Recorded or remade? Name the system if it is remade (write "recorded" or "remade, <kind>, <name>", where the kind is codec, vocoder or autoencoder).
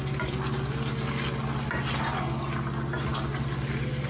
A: recorded